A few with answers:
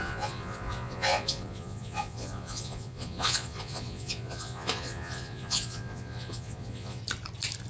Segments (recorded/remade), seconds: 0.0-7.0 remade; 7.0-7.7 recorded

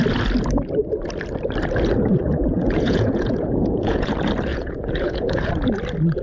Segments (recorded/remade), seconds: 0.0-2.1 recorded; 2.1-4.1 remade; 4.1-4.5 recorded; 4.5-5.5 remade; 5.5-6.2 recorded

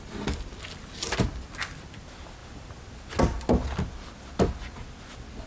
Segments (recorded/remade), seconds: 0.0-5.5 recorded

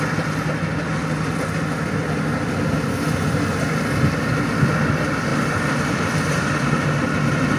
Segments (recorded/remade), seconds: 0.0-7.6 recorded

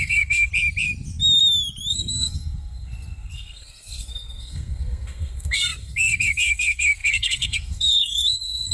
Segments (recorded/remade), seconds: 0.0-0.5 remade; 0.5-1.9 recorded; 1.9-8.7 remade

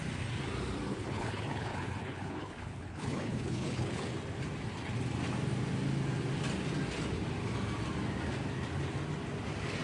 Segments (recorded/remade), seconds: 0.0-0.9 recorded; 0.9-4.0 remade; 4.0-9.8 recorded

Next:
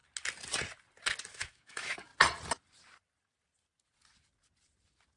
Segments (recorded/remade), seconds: 0.0-1.3 recorded; 1.3-2.1 remade; 2.1-5.2 recorded